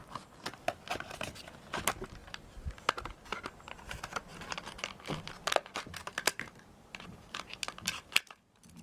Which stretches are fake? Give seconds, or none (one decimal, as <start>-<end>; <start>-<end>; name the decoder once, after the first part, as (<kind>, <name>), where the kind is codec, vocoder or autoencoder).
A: 4.3-4.8 (vocoder, BigVGAN v2); 6.0-7.6